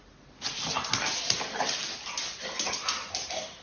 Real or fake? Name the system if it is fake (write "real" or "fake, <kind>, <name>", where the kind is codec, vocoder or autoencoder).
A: real